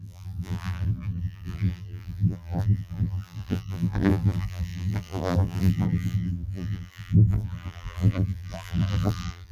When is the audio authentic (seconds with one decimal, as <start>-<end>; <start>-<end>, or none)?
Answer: none